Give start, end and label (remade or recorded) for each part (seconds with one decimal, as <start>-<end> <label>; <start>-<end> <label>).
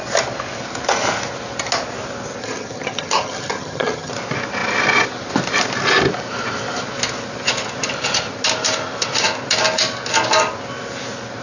0.0-2.4 recorded; 2.4-4.1 remade; 4.1-11.4 recorded